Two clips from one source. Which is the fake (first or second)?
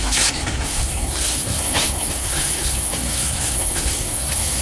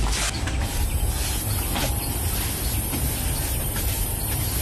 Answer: first